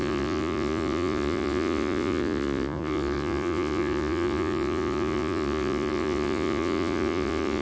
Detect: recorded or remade remade